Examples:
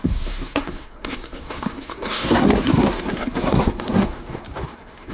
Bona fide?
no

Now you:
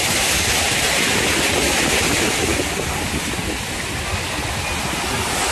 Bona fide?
yes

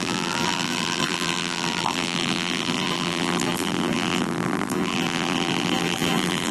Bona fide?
no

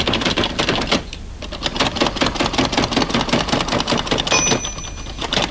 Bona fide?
yes